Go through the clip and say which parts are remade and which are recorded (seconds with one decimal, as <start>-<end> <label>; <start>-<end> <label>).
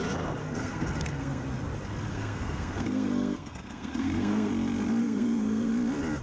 0.0-0.4 recorded; 0.4-1.4 remade; 1.4-2.1 recorded; 2.1-4.5 remade; 4.5-5.0 recorded; 5.0-5.7 remade; 5.7-6.2 recorded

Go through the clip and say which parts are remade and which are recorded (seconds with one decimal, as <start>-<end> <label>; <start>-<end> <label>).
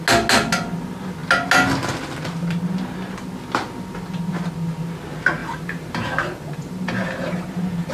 0.0-5.4 recorded; 5.4-7.9 remade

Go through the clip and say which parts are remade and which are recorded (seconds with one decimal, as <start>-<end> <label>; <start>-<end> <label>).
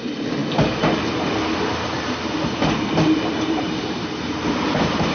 0.0-0.4 remade; 0.4-3.3 recorded; 3.3-5.1 remade